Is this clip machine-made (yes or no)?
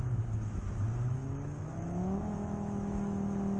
yes